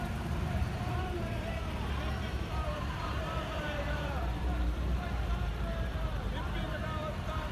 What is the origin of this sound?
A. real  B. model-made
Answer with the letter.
B